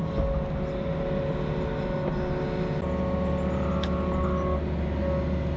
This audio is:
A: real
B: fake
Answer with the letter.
A